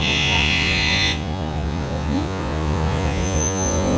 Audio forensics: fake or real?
fake